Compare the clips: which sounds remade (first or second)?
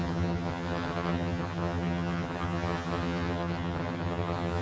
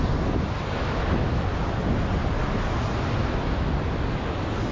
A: first